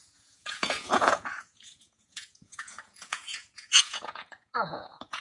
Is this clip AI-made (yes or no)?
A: yes